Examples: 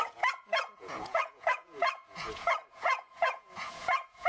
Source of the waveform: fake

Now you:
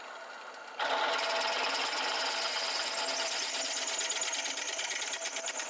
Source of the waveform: real